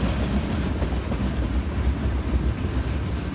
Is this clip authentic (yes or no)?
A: yes